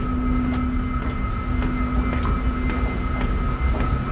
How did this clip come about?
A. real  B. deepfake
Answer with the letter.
A